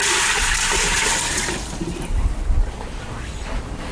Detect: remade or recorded remade